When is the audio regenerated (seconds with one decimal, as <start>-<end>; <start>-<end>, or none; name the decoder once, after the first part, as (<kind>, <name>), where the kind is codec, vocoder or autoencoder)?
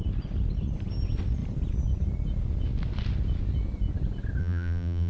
4.4-5.1 (vocoder, BigVGAN v2)